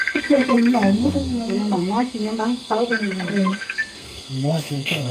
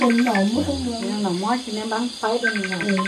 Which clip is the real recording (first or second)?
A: second